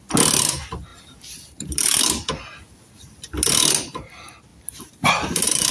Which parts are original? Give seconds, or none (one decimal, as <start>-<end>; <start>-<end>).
0.0-0.9; 2.0-4.5